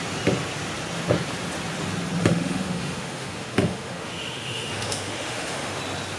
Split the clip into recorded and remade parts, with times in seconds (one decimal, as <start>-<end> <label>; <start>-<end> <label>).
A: 0.0-2.2 recorded; 2.2-5.8 remade; 5.8-6.2 recorded